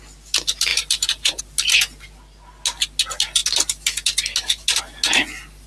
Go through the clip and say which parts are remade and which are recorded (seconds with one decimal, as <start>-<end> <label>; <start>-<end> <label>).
0.0-0.7 recorded; 0.7-1.4 remade; 1.4-5.7 recorded

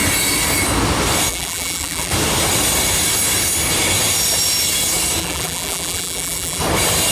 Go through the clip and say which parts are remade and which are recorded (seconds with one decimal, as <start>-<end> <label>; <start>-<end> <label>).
0.0-1.3 recorded; 1.3-2.1 remade; 2.1-5.2 recorded; 5.2-6.6 remade; 6.6-7.1 recorded